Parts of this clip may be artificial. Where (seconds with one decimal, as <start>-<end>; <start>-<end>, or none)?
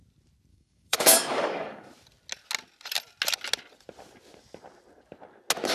0.5-1.9